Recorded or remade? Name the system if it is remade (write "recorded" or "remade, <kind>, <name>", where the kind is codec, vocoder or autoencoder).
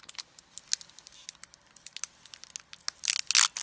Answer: recorded